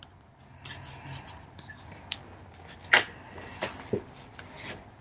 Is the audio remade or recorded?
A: recorded